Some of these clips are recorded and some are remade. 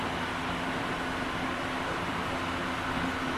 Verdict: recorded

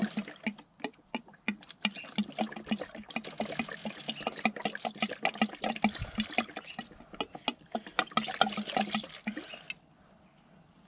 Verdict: recorded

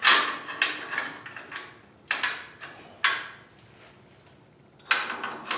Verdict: recorded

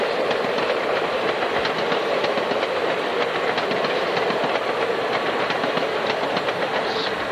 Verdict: recorded